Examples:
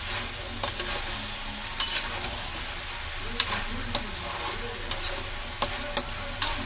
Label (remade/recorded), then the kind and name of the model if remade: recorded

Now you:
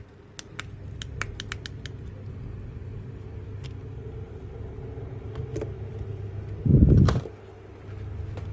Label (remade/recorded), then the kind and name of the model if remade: recorded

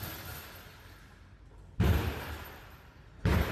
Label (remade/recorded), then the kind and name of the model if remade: recorded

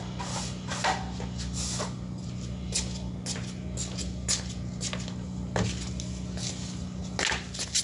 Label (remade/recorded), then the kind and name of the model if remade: recorded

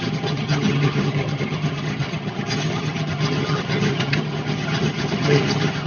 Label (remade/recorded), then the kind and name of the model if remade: remade, vocoder, HiFi-GAN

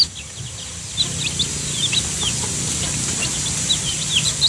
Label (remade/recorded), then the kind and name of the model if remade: recorded